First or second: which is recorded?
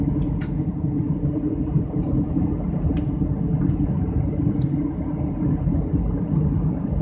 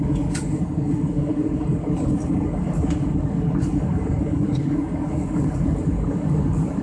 first